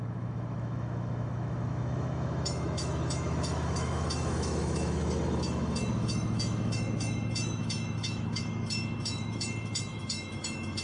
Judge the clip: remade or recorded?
remade